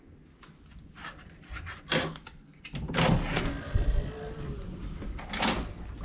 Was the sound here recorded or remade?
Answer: recorded